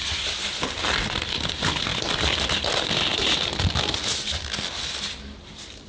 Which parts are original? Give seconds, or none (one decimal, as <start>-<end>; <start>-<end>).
0.0-5.9